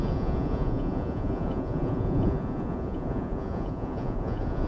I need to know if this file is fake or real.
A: fake